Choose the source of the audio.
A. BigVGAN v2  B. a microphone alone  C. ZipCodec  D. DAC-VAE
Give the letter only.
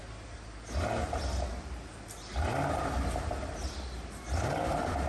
B